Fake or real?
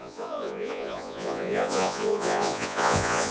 fake